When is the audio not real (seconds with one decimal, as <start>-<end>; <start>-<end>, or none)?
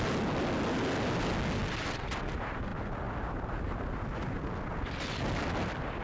none